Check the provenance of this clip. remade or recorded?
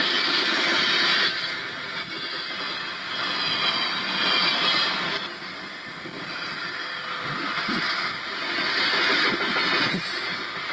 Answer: recorded